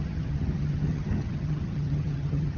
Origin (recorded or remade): remade